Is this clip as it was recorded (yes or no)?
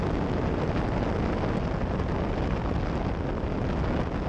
yes